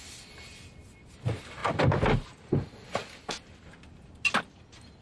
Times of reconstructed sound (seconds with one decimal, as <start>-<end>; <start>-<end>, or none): none